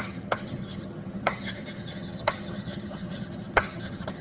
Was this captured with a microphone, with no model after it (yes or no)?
no